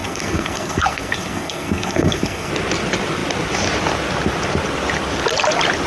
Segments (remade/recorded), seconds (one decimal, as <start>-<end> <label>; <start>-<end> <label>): 0.0-2.5 remade; 2.5-5.9 recorded